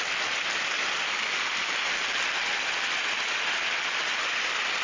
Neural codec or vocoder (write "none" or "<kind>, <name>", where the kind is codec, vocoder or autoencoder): none